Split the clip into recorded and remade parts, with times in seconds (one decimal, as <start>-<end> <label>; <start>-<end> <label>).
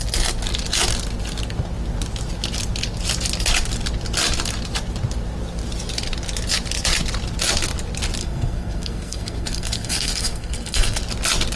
0.0-8.2 recorded; 8.2-11.0 remade; 11.0-11.6 recorded